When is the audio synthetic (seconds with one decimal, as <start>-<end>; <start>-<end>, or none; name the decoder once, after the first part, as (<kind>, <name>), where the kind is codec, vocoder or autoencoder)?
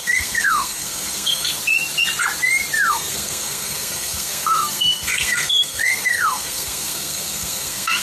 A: 0.0-1.6 (codec, SNAC); 2.9-8.0